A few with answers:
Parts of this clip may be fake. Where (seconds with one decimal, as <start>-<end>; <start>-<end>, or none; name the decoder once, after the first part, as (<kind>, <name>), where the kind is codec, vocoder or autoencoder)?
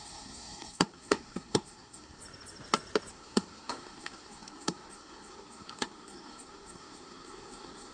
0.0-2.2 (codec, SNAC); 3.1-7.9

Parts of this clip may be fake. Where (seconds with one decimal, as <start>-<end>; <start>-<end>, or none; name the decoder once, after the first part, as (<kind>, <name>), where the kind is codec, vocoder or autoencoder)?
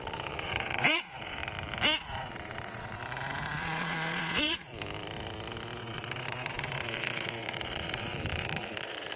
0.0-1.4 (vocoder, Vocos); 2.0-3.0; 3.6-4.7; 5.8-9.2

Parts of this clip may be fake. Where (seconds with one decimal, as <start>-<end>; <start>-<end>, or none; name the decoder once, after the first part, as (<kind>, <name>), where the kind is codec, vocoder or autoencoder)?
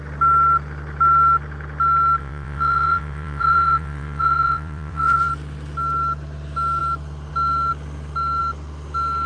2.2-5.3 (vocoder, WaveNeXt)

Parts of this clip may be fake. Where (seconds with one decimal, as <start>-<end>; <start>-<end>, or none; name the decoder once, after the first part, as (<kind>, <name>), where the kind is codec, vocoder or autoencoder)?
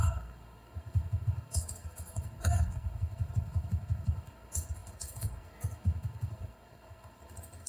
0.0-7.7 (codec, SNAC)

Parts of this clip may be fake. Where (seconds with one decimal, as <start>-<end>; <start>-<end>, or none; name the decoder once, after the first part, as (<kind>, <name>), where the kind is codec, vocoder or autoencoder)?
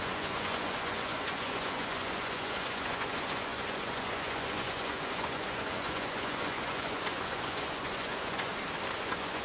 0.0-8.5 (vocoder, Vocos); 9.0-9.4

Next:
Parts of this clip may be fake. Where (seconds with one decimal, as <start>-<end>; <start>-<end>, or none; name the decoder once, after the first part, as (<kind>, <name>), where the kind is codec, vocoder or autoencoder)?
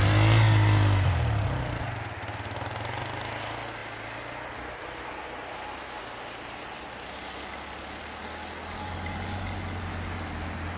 none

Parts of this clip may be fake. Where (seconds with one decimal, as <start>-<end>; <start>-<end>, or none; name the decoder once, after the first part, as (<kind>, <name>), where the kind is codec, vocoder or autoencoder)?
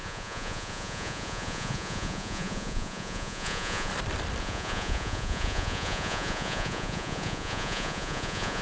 0.0-3.9 (vocoder, Vocos); 4.4-8.6